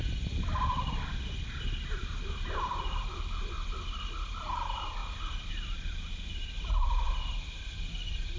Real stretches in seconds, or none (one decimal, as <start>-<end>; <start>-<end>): 0.0-8.4